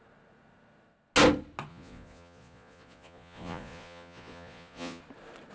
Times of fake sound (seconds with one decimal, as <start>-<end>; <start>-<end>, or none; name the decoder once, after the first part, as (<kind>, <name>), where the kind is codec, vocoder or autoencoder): 1.7-5.0 (vocoder, Vocos)